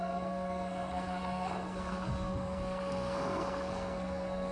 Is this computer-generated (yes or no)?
yes